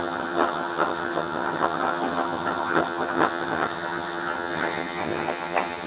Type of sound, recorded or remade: remade